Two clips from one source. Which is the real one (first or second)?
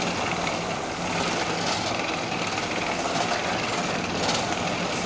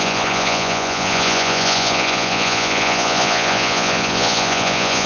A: first